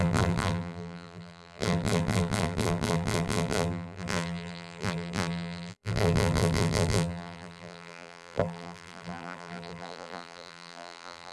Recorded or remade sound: remade